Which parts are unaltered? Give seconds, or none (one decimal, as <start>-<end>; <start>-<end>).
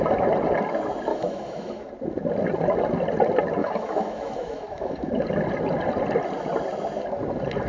0.0-1.1; 1.9-3.6; 5.1-7.7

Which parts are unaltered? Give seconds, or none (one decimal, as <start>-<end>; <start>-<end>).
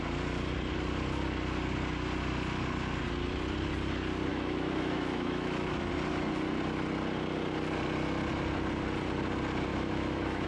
0.0-4.3; 5.9-9.7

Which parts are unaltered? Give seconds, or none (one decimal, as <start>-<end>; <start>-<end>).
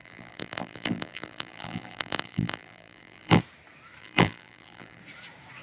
3.4-4.0; 5.0-5.6